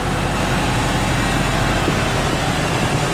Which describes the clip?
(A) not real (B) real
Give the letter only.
B